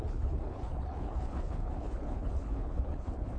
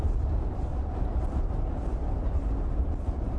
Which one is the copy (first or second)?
first